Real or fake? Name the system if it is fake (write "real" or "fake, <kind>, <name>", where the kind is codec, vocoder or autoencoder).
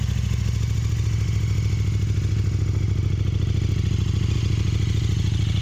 real